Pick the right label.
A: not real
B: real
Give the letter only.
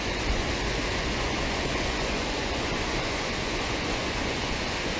A